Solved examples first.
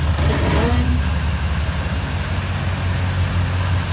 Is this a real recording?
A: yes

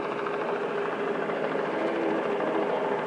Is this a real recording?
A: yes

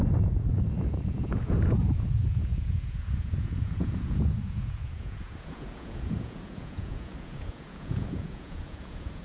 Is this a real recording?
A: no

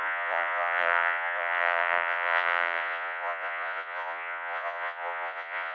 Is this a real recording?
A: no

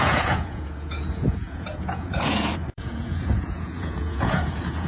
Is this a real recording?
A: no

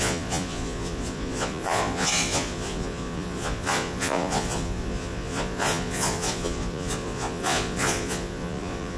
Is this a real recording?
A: no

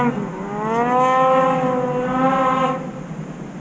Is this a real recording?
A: yes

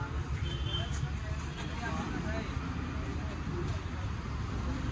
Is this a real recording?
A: yes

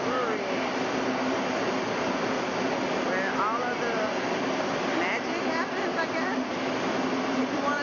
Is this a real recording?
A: yes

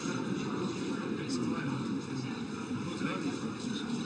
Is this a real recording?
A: yes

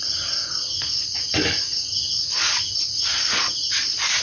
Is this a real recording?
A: yes